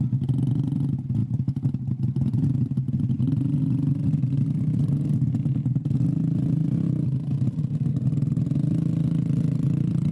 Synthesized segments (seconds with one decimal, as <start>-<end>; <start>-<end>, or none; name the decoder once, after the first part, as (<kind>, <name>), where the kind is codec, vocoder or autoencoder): none